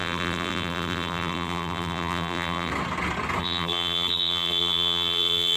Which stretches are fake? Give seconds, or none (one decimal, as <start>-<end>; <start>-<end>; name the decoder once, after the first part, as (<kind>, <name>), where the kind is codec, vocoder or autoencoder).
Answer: 0.0-2.7 (vocoder, BigVGAN v2); 3.4-5.6